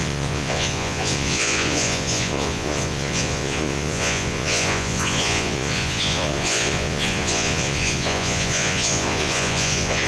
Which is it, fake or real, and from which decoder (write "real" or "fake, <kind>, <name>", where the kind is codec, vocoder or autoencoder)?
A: fake, vocoder, Vocos